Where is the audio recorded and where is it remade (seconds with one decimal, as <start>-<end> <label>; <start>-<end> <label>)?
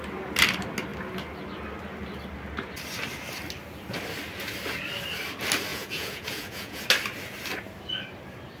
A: 0.0-5.7 recorded; 5.7-6.8 remade; 6.8-8.6 recorded